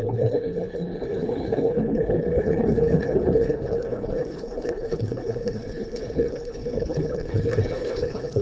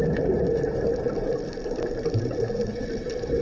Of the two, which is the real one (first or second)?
second